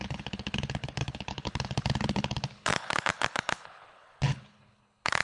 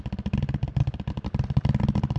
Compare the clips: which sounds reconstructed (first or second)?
first